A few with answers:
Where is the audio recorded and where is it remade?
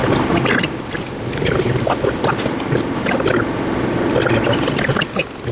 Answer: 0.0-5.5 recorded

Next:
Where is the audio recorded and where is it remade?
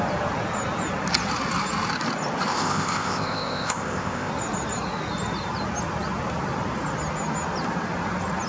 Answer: 0.0-2.5 recorded; 2.5-4.3 remade; 4.3-8.5 recorded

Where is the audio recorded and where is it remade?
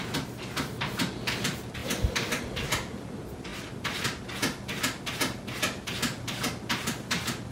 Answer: 0.0-7.5 recorded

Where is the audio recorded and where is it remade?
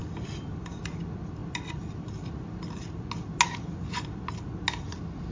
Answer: 0.0-0.8 remade; 0.8-5.3 recorded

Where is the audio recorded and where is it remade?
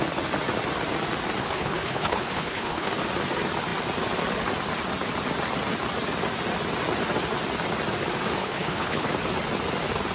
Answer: 0.0-1.4 recorded; 1.4-2.9 remade; 2.9-8.4 recorded; 8.4-9.1 remade; 9.1-10.1 recorded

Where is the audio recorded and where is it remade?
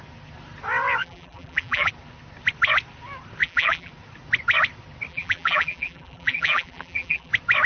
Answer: 0.0-1.0 recorded; 1.0-1.9 remade; 1.9-3.4 recorded; 3.4-3.9 remade; 3.9-5.1 recorded; 5.1-7.3 remade; 7.3-7.7 recorded